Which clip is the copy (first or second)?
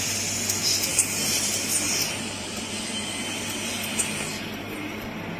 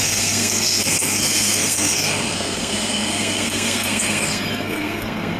second